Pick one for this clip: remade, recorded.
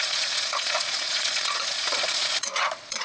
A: remade